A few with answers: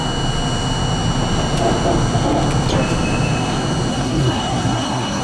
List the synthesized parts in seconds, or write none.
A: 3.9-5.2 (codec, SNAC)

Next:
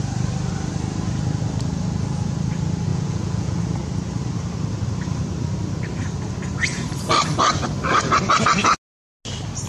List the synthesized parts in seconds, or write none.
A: 2.9-3.6 (vocoder, Vocos)

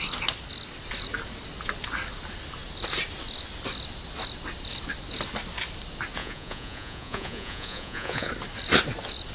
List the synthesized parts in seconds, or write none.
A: 6.2-8.3 (vocoder, Vocos)